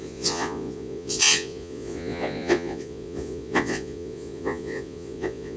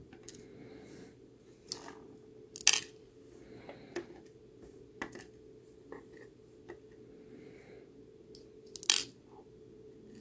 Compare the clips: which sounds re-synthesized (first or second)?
first